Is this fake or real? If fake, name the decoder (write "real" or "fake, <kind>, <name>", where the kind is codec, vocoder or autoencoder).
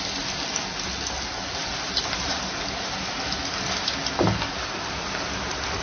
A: real